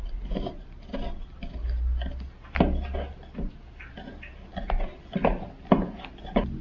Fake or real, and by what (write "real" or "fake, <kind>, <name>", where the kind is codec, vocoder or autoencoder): real